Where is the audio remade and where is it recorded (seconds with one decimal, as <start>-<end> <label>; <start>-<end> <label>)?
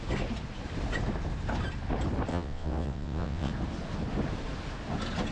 0.0-2.3 recorded; 2.3-3.5 remade; 3.5-5.3 recorded